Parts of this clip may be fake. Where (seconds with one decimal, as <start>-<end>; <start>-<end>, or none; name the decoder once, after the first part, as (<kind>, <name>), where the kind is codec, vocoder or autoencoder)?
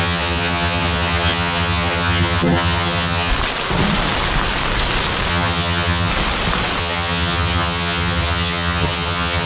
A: 0.0-3.3 (vocoder, HiFi-GAN); 5.3-6.1; 6.8-9.5